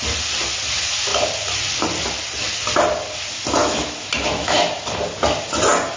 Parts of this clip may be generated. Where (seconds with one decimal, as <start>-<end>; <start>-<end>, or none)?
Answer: 3.6-4.7